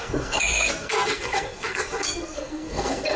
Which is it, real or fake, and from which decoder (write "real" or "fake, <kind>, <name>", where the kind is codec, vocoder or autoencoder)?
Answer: fake, codec, SNAC